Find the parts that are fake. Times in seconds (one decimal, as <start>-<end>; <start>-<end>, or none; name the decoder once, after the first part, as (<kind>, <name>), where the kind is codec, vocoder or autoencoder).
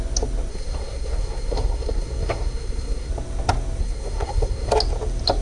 0.5-3.1 (codec, SNAC); 3.8-4.7